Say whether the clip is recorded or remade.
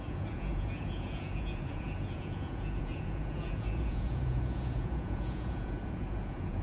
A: remade